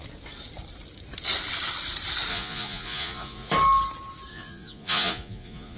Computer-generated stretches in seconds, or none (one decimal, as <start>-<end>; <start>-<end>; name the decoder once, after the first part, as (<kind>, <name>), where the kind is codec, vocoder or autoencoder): 2.3-3.5 (vocoder, Vocos); 4.3-5.8

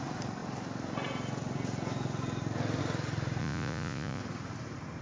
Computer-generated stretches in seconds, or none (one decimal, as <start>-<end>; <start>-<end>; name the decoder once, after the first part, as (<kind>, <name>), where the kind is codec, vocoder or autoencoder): 3.4-4.2 (vocoder, Vocos)

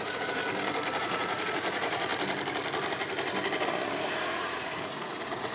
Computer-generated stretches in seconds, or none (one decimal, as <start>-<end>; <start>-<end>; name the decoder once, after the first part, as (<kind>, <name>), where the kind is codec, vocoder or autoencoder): 0.0-0.4 (vocoder, Vocos); 1.0-2.1; 4.1-5.5

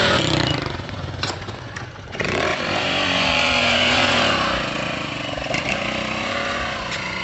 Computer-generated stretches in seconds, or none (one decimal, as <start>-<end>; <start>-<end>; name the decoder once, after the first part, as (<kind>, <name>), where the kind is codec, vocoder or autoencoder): 0.0-7.2 (vocoder, Vocos)